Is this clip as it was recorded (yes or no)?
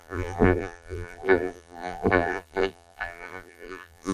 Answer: no